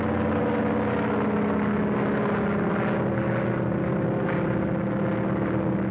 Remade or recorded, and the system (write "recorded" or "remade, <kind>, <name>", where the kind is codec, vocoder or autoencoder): recorded